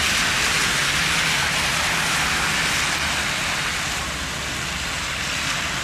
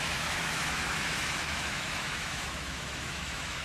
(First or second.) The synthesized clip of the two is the second